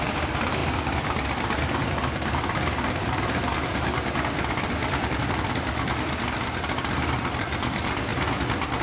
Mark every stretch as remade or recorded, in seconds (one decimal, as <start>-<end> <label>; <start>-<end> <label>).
0.0-8.1 remade; 8.1-8.8 recorded